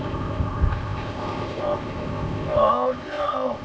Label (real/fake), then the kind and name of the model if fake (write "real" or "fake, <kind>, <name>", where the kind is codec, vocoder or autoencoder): fake, codec, ZipCodec